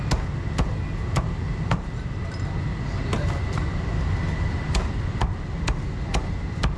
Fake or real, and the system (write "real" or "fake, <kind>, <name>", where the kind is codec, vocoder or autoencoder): real